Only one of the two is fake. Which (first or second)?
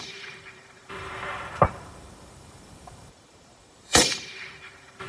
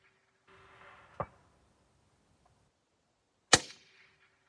first